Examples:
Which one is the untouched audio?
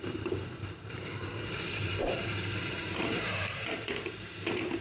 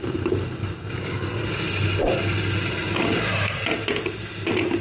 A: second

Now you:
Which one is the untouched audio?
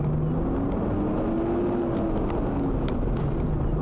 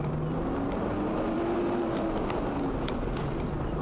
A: first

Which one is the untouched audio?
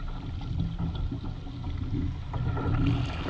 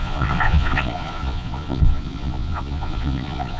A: first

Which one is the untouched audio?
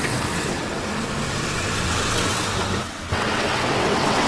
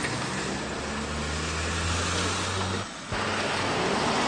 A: second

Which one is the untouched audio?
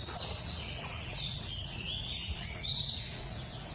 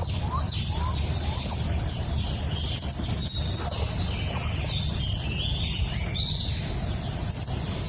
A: second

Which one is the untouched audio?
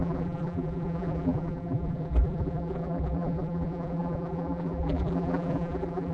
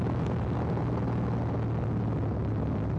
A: second